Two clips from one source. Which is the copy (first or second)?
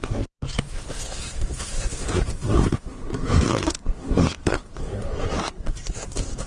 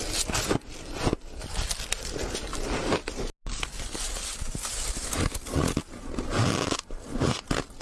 first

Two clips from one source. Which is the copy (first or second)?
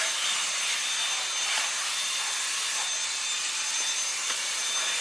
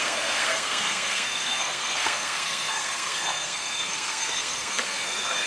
second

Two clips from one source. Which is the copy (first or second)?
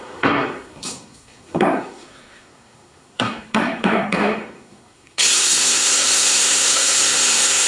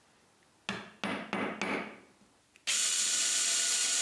first